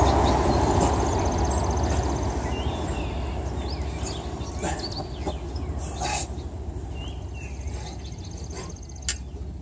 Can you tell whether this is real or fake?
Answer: real